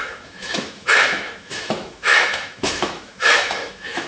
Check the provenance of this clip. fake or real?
fake